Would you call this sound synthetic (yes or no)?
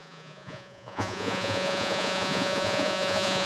yes